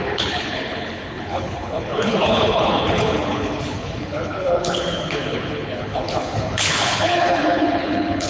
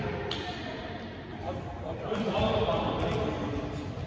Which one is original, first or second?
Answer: second